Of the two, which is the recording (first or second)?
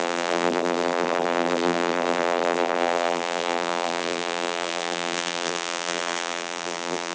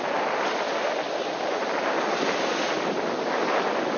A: second